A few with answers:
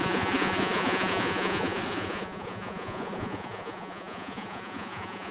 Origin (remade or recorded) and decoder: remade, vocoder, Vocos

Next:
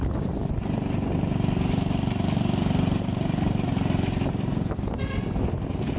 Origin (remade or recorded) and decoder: recorded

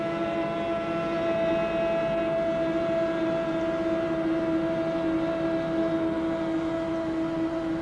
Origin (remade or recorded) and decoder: recorded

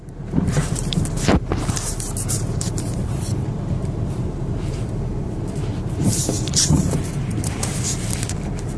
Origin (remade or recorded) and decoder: remade, vocoder, BigVGAN v2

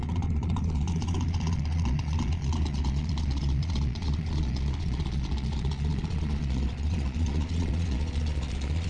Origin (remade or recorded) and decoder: remade, vocoder, Vocos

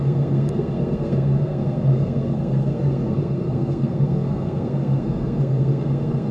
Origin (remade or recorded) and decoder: remade, codec, SNAC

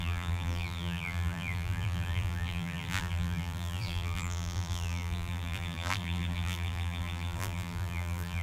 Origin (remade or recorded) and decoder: remade, vocoder, BigVGAN v2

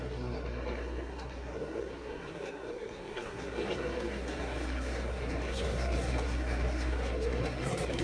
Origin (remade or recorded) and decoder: remade, codec, SNAC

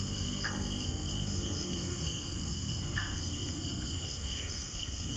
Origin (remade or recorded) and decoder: remade, codec, SNAC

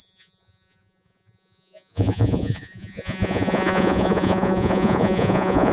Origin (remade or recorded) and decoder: remade, vocoder, Vocos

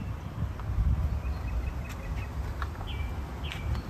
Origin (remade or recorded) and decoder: recorded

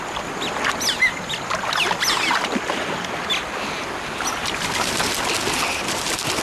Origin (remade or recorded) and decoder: recorded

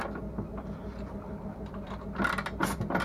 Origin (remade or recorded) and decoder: recorded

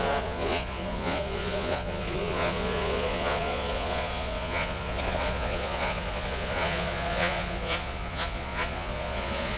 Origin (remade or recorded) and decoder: remade, vocoder, Vocos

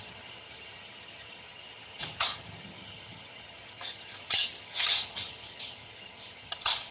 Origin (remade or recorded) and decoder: remade, vocoder, HiFi-GAN